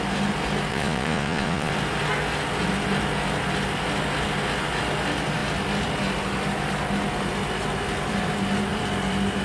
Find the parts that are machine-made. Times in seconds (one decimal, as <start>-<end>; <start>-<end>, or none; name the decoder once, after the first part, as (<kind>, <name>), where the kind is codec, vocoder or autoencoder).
0.7-1.7 (vocoder, Vocos)